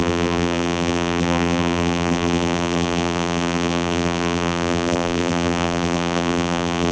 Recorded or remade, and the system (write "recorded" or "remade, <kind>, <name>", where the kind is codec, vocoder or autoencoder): remade, vocoder, BigVGAN v2